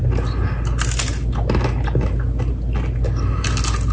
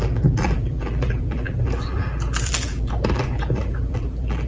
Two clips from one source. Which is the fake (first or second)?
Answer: second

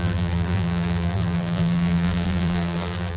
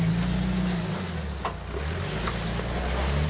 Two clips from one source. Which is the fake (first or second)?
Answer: first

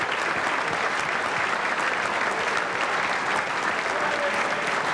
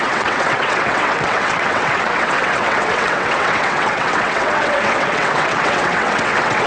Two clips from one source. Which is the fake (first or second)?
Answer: second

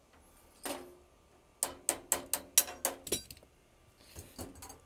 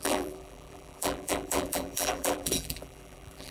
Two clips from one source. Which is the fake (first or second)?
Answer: second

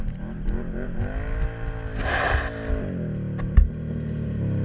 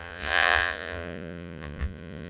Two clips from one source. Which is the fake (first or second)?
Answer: second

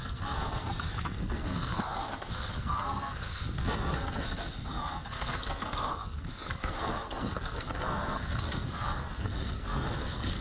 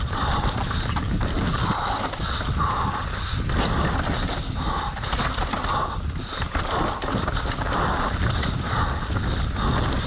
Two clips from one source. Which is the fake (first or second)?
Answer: first